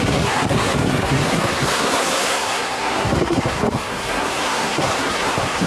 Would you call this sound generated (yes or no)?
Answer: yes